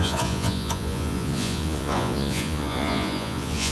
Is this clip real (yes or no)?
no